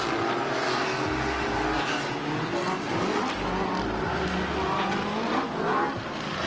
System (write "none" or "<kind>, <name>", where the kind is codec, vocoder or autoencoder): none